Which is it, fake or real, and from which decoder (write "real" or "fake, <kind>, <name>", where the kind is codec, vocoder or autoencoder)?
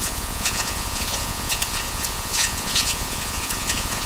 fake, vocoder, Vocos